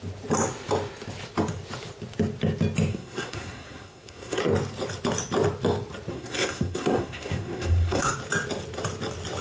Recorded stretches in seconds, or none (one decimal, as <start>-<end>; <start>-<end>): 0.0-2.9; 4.4-6.1; 8.1-9.4

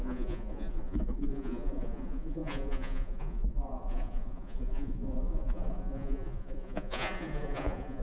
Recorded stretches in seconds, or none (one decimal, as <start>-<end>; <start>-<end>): none

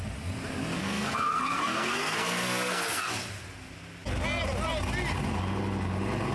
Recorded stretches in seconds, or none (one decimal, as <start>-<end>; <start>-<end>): 0.0-0.8; 3.1-6.3

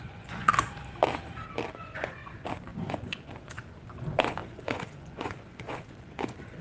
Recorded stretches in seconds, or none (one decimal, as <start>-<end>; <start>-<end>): 0.5-1.7

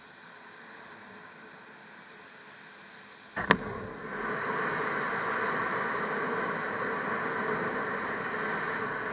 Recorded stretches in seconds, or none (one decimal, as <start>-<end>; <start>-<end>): 0.0-9.1

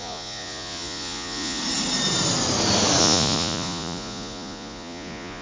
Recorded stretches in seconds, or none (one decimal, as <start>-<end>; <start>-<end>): 1.6-3.0

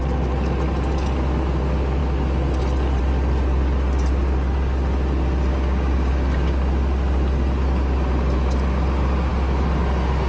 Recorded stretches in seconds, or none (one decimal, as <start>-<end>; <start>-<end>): 0.0-5.5; 6.1-10.3